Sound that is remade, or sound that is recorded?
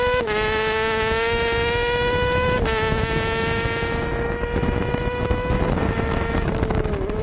remade